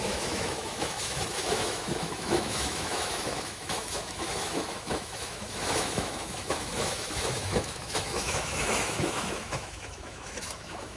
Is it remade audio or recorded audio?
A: remade